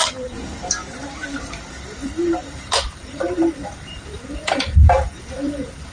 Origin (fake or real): fake